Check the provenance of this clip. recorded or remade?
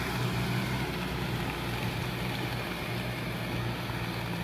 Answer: recorded